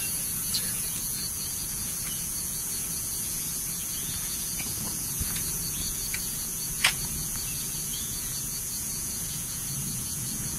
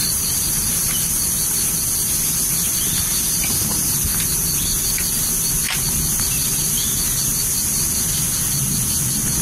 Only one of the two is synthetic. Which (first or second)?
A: first